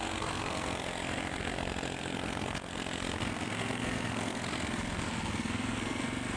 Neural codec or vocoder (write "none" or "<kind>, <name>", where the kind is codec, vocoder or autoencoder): codec, SNAC